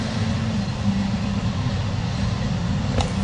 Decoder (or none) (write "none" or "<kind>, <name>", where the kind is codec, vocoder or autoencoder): none